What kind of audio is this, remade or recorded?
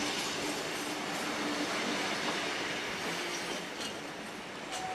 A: recorded